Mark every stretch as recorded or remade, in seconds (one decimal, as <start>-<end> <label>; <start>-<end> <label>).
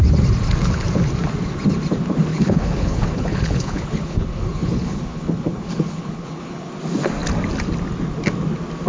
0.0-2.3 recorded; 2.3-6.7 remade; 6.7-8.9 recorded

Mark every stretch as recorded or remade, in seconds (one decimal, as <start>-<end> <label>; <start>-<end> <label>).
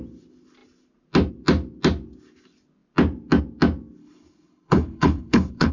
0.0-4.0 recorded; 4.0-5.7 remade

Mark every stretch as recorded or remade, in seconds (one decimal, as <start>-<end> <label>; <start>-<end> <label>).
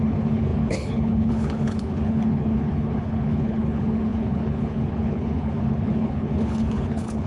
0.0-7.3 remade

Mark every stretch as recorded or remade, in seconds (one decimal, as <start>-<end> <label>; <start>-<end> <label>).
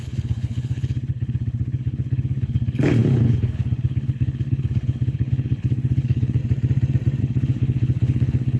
0.0-6.4 remade; 6.4-7.2 recorded; 7.2-8.6 remade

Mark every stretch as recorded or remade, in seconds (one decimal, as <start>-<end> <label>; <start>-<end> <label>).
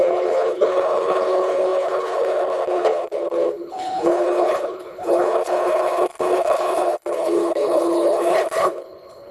0.0-9.3 remade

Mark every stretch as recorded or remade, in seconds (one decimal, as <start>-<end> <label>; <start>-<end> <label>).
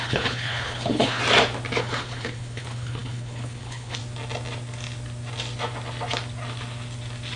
0.0-1.2 remade; 1.2-1.8 recorded; 1.8-4.0 remade; 4.0-7.4 recorded